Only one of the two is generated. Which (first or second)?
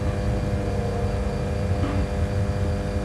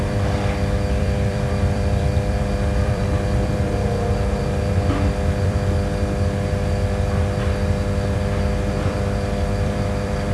second